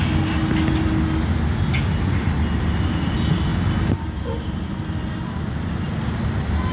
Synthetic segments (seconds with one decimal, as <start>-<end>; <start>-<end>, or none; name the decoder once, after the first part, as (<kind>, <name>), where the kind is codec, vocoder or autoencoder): 3.5-4.8 (vocoder, BigVGAN v2)